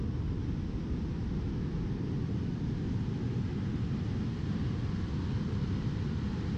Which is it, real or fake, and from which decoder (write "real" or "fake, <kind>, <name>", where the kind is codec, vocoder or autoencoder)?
real